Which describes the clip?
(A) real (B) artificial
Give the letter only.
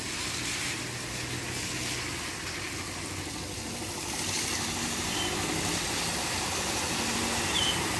A